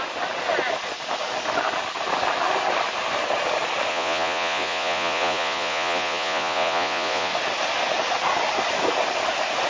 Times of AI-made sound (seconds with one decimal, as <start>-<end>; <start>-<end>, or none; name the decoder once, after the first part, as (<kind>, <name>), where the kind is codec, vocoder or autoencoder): 3.9-7.3 (vocoder, Vocos)